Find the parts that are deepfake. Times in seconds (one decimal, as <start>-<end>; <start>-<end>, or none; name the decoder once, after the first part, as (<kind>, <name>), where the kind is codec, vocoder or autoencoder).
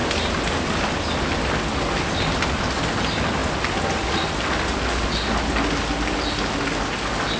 none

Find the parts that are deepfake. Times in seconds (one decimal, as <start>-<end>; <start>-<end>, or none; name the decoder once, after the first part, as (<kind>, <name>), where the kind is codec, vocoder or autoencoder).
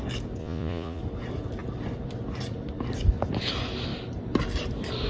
0.4-1.0 (vocoder, Vocos)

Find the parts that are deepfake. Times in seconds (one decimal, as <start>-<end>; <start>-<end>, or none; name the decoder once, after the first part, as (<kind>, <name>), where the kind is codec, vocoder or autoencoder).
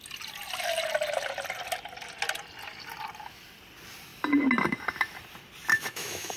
5.7-6.4 (autoencoder, DAC-VAE)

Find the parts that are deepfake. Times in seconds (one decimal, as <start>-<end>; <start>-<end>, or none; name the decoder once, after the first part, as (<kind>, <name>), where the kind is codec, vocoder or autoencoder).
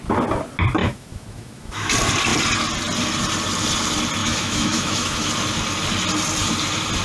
0.8-1.9 (autoencoder, DAC-VAE); 4.2-5.3